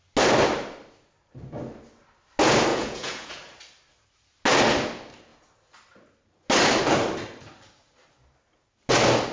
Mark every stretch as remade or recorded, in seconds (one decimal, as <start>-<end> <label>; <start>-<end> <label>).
0.0-2.7 recorded; 2.7-3.4 remade; 3.4-9.3 recorded